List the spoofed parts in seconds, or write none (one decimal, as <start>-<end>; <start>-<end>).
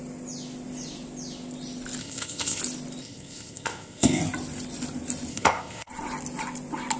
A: 2.0-2.6; 3.0-4.2; 5.3-5.9